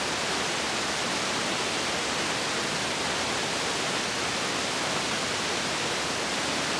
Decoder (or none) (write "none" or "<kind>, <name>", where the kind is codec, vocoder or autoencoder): none